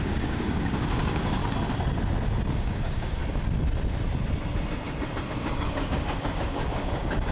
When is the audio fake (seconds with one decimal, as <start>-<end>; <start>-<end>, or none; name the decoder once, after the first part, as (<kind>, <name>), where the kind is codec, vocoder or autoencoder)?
0.0-1.4 (codec, DAC); 2.5-3.2; 5.3-7.3